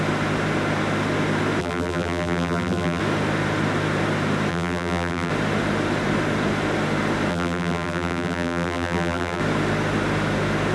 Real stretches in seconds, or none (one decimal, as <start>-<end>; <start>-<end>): 0.0-1.6; 3.0-4.5; 5.3-7.3; 9.4-10.7